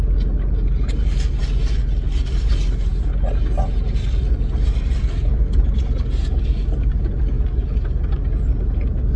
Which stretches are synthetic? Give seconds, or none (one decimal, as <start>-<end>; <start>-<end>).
none